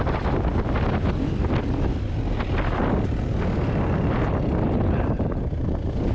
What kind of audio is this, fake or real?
real